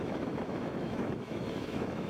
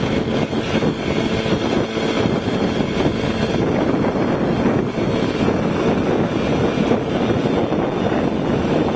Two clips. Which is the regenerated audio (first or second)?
first